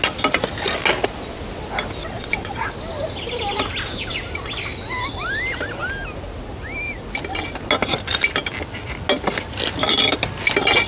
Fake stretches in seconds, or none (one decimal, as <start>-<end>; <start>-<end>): 2.0-2.7